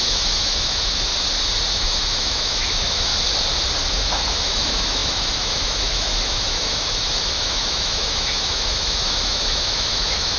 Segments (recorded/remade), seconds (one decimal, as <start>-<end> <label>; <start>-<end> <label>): 0.0-1.1 remade; 1.1-1.7 recorded; 1.7-3.1 remade; 3.1-3.9 recorded; 3.9-10.4 remade